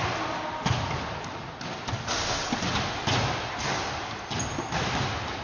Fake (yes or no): no